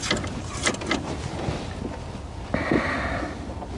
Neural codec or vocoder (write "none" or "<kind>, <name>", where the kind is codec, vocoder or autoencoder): none